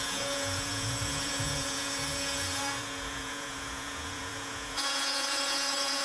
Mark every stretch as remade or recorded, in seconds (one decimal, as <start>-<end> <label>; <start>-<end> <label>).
0.0-6.0 remade